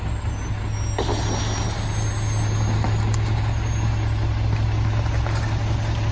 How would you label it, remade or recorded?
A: recorded